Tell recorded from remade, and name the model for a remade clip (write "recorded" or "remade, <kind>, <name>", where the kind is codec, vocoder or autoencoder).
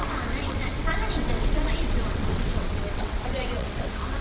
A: remade, vocoder, WaveNeXt